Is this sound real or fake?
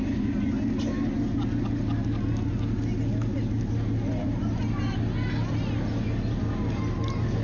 real